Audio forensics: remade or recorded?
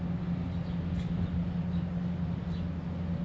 recorded